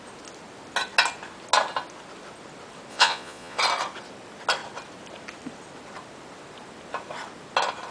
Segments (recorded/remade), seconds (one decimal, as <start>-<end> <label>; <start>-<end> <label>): 0.0-2.9 recorded; 2.9-3.6 remade; 3.6-7.9 recorded